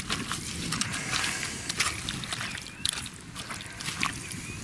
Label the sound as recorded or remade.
recorded